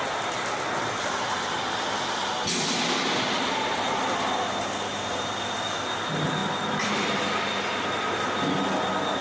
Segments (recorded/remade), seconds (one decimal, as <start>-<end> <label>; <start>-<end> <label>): 0.0-9.2 recorded